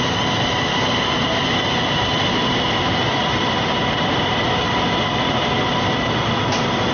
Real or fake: real